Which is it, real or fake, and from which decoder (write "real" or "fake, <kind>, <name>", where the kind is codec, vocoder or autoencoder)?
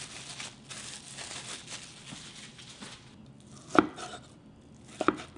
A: real